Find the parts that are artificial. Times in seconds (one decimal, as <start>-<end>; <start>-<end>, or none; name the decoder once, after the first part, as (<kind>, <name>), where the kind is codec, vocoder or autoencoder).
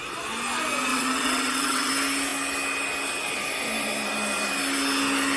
0.9-1.9 (vocoder, WaveNeXt)